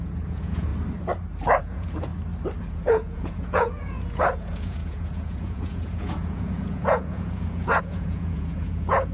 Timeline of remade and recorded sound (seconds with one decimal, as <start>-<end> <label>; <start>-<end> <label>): 0.0-0.7 remade; 0.7-1.6 recorded; 1.6-2.1 remade; 2.1-2.6 recorded; 2.6-9.1 remade